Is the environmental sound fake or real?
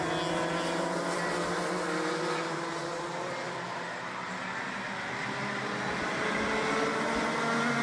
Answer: real